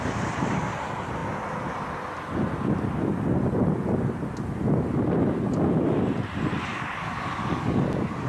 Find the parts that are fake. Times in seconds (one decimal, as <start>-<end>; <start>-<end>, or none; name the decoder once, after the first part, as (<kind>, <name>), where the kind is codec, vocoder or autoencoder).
6.7-7.7 (codec, DAC)